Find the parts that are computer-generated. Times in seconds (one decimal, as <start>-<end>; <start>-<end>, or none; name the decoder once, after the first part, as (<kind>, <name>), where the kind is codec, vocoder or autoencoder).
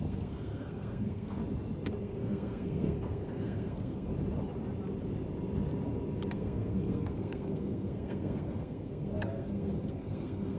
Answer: 0.0-1.4 (codec, SNAC); 2.0-4.1; 6.3-10.6